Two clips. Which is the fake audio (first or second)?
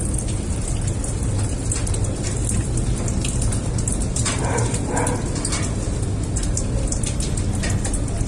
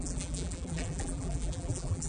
second